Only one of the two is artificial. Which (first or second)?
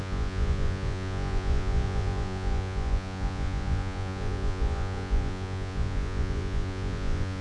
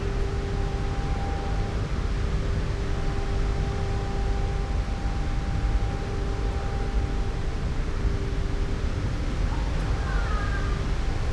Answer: first